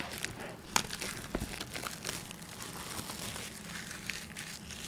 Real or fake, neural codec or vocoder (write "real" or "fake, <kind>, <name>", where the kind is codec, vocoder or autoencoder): real